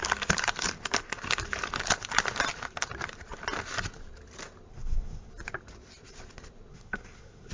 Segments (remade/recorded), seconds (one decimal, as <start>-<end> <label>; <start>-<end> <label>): 0.0-4.7 recorded; 4.7-5.3 remade; 5.3-6.7 recorded; 6.7-7.5 remade